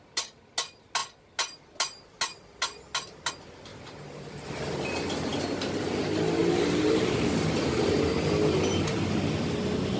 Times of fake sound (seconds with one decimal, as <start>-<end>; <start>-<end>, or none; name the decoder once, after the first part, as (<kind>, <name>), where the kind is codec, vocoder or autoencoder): 3.7-4.5 (vocoder, BigVGAN v2); 6.4-8.0